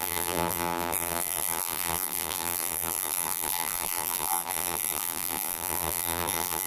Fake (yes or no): yes